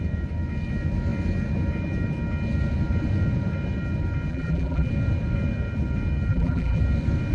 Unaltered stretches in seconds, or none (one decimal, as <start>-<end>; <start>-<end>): 0.0-4.3; 4.9-6.3; 6.8-7.3